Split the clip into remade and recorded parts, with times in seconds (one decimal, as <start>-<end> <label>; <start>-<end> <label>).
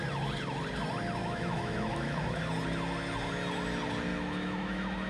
0.0-1.2 recorded; 1.2-2.4 remade; 2.4-4.1 recorded; 4.1-5.1 remade